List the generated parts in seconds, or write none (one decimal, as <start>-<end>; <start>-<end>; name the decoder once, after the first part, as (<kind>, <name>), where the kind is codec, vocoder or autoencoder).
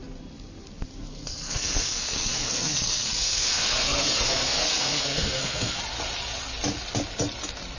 1.1-5.8 (codec, SNAC)